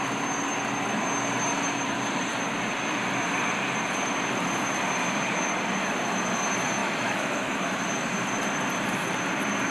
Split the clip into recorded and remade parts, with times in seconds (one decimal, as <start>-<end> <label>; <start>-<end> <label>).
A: 0.0-6.8 recorded; 6.8-7.6 remade; 7.6-9.7 recorded